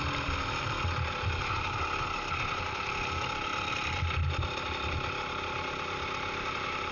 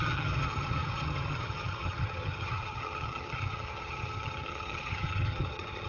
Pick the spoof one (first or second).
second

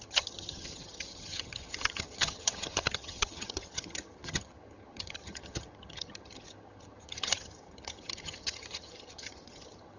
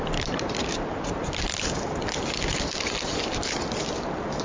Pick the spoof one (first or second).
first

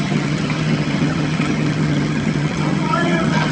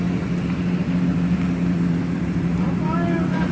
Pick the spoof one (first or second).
first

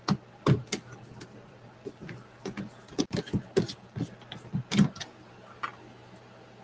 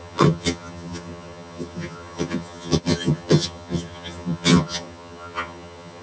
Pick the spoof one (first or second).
second